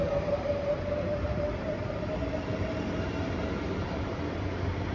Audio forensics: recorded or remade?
remade